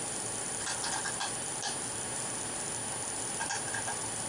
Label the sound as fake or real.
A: real